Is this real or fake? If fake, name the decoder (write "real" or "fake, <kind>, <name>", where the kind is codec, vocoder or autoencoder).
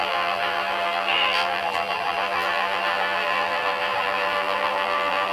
fake, vocoder, BigVGAN v2